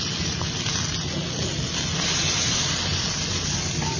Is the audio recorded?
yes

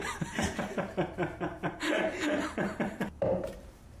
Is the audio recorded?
no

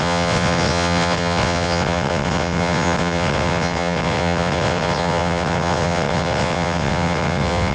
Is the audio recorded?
no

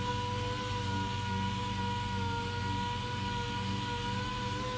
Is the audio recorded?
yes